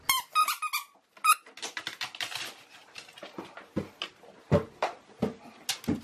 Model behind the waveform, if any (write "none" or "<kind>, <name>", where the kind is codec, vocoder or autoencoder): none